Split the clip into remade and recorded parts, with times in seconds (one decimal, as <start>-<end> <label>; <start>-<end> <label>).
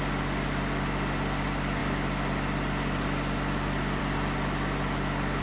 0.0-5.4 recorded